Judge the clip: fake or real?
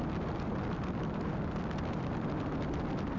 real